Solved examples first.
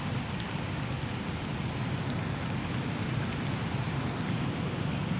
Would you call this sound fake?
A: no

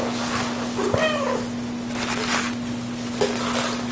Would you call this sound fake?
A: no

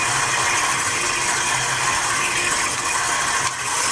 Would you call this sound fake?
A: no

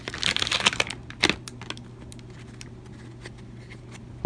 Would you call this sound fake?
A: no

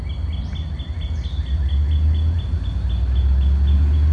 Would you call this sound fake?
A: no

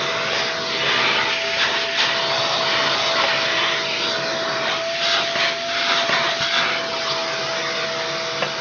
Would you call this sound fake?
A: no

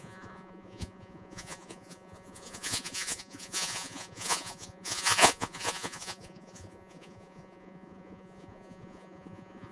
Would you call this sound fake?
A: yes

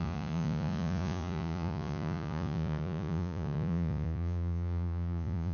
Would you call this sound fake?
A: yes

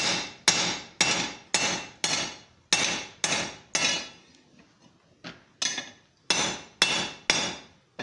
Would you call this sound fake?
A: no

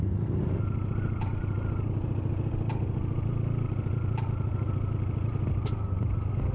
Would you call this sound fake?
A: no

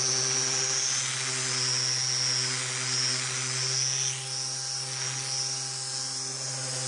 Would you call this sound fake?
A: no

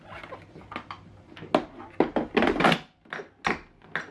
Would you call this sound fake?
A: no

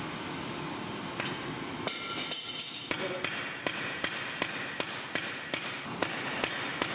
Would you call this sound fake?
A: no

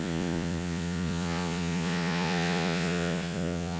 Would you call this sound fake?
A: yes